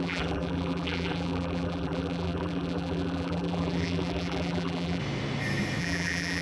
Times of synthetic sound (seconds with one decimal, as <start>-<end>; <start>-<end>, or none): 0.0-5.0; 5.8-6.4